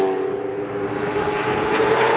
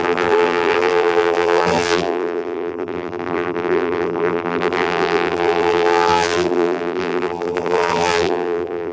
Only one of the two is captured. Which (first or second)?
first